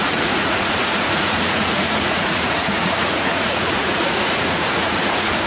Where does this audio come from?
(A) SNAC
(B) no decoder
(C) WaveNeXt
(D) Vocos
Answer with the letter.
D